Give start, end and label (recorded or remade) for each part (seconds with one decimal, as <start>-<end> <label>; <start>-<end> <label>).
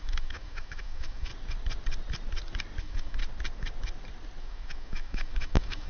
0.0-1.3 remade; 1.3-2.8 recorded; 2.8-3.2 remade; 3.2-4.4 recorded; 4.4-5.9 remade